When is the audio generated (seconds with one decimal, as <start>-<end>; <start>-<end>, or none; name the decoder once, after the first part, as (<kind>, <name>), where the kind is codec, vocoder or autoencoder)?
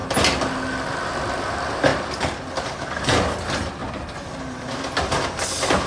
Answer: 0.9-3.8 (vocoder, BigVGAN v2); 4.4-5.9